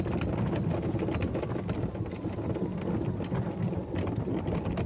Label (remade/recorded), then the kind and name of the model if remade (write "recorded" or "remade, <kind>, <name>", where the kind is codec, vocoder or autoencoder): recorded